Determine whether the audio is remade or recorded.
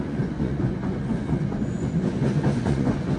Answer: remade